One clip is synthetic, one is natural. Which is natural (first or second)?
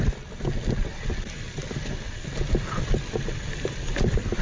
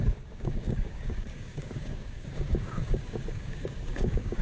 first